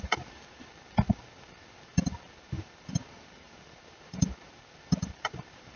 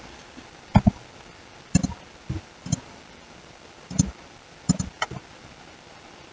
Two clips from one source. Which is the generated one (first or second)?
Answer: first